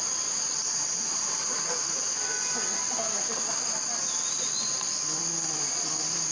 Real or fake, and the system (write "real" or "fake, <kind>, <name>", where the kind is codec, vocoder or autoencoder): real